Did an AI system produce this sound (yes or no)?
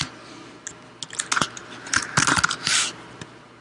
no